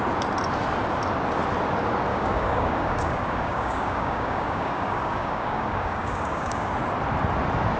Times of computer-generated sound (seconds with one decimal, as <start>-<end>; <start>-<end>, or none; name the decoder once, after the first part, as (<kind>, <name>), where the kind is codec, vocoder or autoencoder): 2.1-6.7 (codec, DAC)

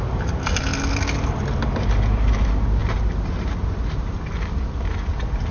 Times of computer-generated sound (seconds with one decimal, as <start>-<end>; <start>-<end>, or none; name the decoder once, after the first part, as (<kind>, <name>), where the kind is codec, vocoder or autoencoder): none

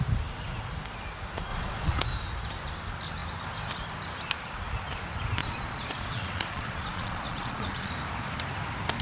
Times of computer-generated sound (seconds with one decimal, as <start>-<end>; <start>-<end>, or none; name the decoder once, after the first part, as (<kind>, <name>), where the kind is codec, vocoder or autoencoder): 1.5-2.0 (vocoder, Vocos); 5.4-7.9

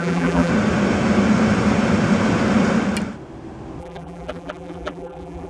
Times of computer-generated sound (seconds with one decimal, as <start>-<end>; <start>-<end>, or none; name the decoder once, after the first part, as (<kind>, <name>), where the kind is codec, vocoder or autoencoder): 0.0-0.5 (vocoder, BigVGAN v2); 3.8-5.5